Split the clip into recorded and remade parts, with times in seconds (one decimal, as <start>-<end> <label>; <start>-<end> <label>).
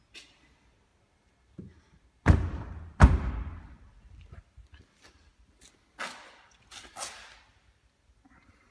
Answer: 0.0-0.9 recorded; 0.9-3.3 remade; 3.3-8.7 recorded